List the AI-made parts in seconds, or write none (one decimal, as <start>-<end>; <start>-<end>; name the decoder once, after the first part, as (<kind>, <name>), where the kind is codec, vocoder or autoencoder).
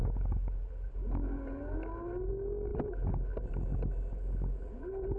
none